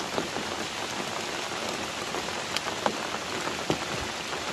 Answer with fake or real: real